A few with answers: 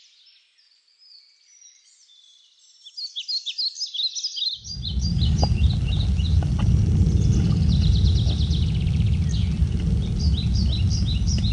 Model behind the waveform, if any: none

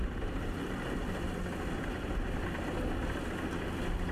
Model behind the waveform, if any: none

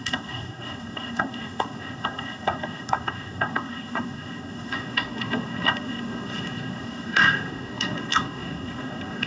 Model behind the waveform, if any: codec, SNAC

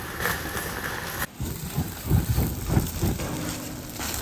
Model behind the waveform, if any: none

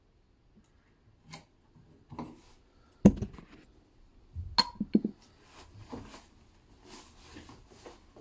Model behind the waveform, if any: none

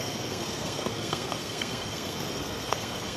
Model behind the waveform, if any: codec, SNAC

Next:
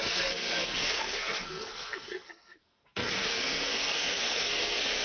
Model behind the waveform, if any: codec, SNAC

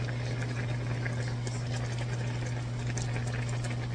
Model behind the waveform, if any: none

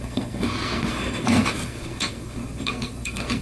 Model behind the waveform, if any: codec, SNAC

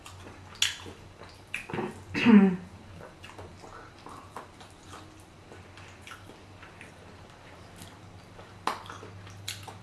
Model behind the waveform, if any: none